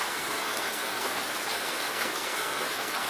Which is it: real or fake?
fake